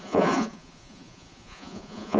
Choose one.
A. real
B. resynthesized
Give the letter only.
B